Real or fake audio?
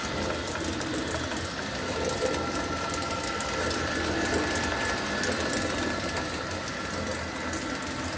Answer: fake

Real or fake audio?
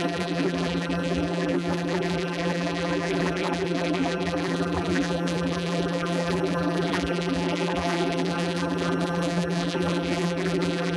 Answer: fake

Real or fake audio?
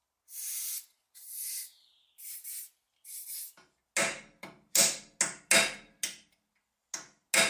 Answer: real